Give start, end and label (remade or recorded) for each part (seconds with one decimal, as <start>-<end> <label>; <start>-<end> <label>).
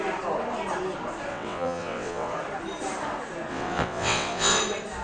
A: 0.0-1.3 recorded; 1.3-2.3 remade; 2.3-3.5 recorded; 3.5-4.6 remade; 4.6-5.0 recorded